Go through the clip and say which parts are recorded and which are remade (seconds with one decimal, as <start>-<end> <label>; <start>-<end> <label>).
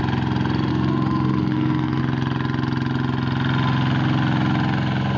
0.0-0.7 recorded; 0.7-2.0 remade; 2.0-5.2 recorded